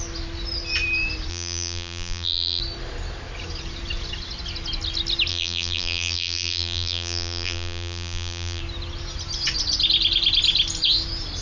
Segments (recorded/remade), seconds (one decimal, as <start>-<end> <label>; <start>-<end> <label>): 0.0-1.3 recorded; 1.3-2.6 remade; 2.6-5.3 recorded; 5.3-8.6 remade; 8.6-11.4 recorded